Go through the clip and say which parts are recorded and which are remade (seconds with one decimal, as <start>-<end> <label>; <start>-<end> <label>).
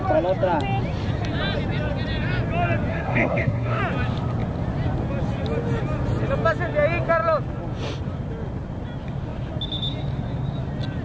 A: 0.0-2.9 recorded; 2.9-3.8 remade; 3.8-11.0 recorded